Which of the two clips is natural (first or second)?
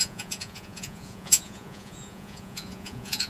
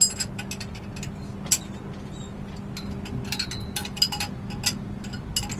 second